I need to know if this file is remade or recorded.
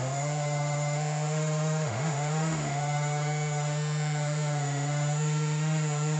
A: remade